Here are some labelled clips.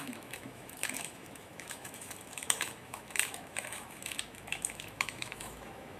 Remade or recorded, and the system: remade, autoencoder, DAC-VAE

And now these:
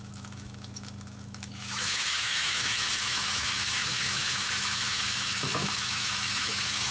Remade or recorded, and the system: remade, autoencoder, DAC-VAE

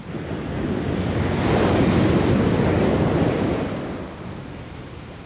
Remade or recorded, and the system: recorded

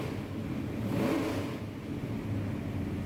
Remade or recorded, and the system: recorded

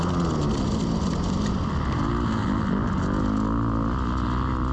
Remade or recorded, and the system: recorded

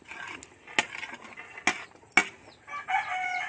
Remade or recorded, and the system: recorded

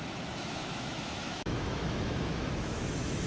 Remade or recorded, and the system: remade, autoencoder, DAC-VAE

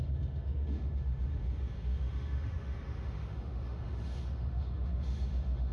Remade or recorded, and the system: remade, autoencoder, DAC-VAE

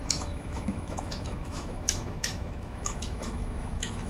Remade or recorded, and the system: remade, autoencoder, DAC-VAE